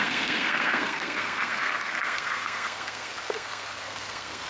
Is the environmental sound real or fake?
fake